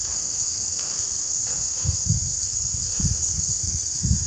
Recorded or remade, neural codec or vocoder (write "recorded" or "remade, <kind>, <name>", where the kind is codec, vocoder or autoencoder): remade, codec, SNAC